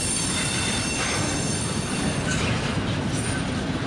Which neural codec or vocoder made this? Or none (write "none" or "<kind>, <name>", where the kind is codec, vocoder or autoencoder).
none